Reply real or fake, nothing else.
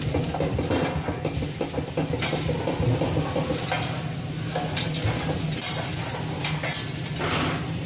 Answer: real